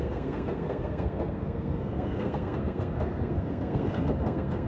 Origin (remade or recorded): remade